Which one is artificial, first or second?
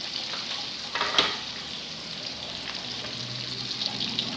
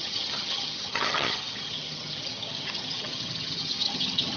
second